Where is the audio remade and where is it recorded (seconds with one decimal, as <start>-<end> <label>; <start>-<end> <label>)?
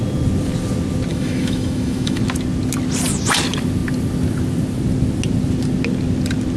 0.0-1.1 recorded; 1.1-2.2 remade; 2.2-6.6 recorded